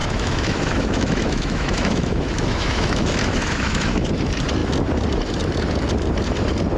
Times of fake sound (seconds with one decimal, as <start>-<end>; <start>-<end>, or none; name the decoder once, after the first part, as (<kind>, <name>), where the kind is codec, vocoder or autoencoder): 0.0-4.1 (autoencoder, DAC-VAE)